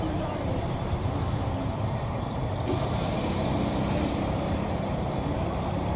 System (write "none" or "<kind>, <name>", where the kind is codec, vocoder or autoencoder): vocoder, BigVGAN v2